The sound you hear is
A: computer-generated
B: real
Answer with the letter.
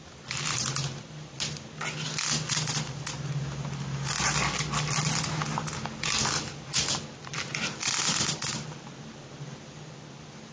B